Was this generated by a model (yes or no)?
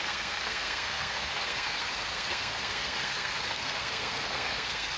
yes